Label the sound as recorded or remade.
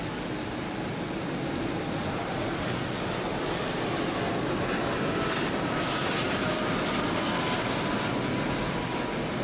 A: recorded